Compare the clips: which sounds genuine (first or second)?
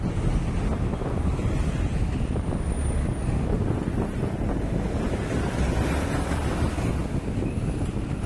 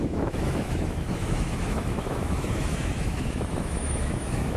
first